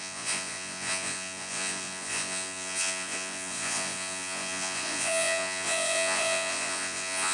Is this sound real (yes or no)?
no